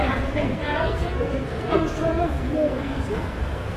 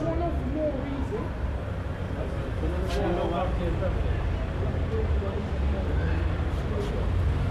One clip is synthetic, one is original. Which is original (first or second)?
second